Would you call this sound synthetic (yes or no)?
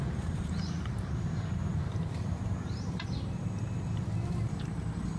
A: yes